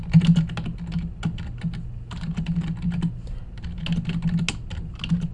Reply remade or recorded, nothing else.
recorded